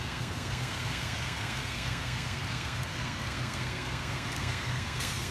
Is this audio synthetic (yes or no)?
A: yes